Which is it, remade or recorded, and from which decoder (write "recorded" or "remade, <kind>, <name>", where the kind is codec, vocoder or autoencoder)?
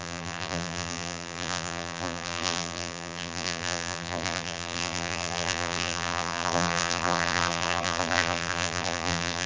remade, vocoder, BigVGAN v2